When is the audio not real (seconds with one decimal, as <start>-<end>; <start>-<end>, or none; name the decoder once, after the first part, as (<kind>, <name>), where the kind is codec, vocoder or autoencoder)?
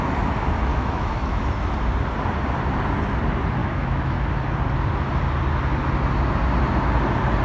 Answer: 0.7-1.5 (autoencoder, DAC-VAE); 3.6-4.3